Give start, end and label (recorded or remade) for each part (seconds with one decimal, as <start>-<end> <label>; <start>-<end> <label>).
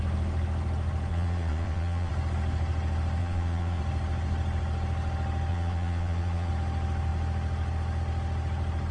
0.0-1.1 recorded; 1.1-2.1 remade; 2.1-3.2 recorded; 3.2-3.8 remade; 3.8-5.5 recorded; 5.5-6.5 remade; 6.5-8.9 recorded